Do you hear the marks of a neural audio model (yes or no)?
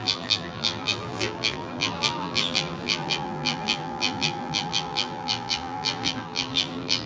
yes